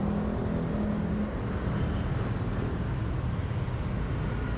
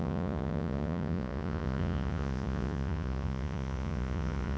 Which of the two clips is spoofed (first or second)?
second